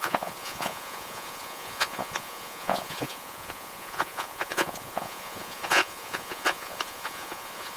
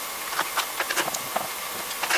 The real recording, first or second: second